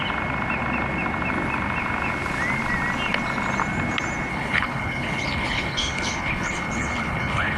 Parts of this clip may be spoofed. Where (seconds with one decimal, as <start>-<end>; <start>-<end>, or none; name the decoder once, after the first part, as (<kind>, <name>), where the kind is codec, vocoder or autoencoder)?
4.3-7.6 (codec, HILCodec)